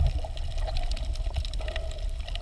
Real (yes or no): yes